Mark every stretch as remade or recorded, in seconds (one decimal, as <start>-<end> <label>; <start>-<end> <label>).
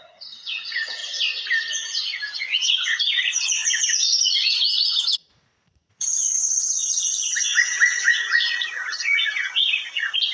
0.0-1.0 remade; 1.0-2.4 recorded; 2.4-10.3 remade